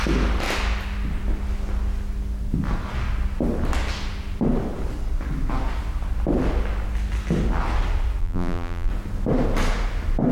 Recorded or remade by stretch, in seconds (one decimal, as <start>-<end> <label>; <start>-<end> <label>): 0.0-8.2 recorded; 8.2-8.9 remade; 8.9-10.3 recorded